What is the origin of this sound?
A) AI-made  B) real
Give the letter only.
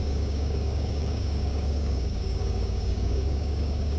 A